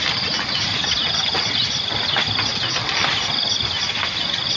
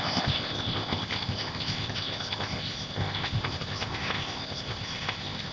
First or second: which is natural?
first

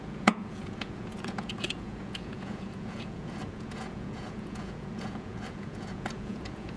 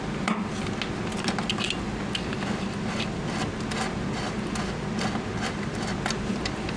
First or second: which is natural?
second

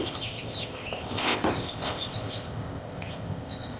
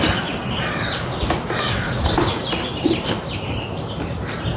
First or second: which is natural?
second